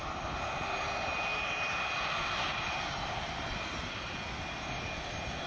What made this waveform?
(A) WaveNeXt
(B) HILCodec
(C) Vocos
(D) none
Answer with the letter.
D